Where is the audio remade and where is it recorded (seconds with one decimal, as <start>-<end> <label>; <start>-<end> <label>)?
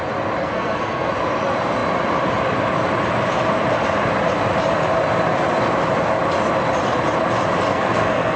0.0-0.4 recorded; 0.4-1.1 remade; 1.1-7.7 recorded; 7.7-8.4 remade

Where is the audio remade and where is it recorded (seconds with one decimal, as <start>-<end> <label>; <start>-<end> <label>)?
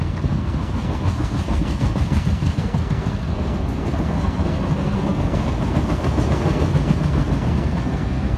0.0-8.4 remade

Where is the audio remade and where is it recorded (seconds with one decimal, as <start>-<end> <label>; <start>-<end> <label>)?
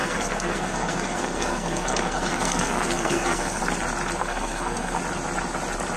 0.0-3.6 remade; 3.6-4.2 recorded; 4.2-5.0 remade; 5.0-6.0 recorded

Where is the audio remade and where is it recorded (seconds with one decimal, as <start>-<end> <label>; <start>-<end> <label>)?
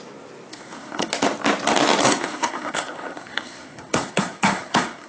0.0-0.5 recorded; 0.5-1.1 remade; 1.1-2.0 recorded; 2.0-5.1 remade